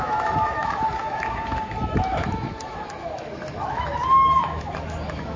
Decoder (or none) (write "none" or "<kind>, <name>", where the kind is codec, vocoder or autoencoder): autoencoder, DAC-VAE